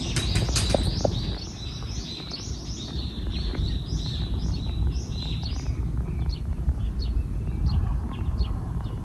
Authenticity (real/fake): real